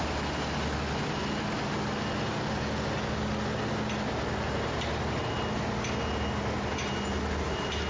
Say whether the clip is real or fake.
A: real